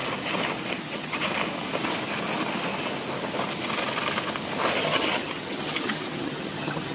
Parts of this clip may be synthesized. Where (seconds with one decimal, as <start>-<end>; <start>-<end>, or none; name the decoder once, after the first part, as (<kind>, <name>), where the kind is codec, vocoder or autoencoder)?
0.8-1.3 (vocoder, HiFi-GAN); 4.8-6.9